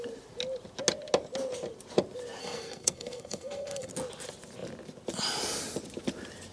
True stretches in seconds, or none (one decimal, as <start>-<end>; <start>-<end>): 0.0-2.4; 3.9-6.5